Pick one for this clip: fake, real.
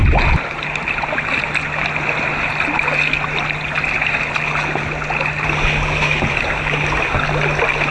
real